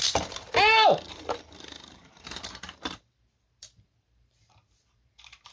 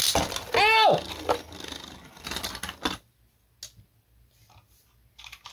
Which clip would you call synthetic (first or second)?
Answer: first